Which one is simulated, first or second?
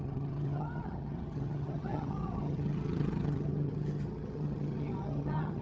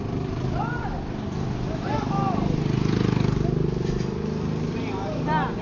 first